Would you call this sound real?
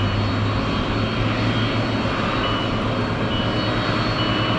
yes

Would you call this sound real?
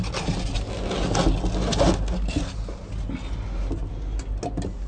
yes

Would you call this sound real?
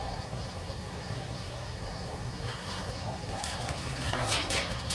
no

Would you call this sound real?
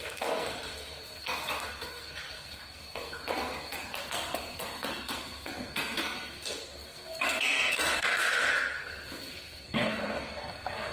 no